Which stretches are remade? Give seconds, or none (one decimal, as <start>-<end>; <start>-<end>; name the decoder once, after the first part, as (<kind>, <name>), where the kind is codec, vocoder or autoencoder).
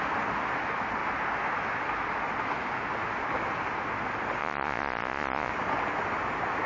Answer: 4.4-5.5 (vocoder, Vocos)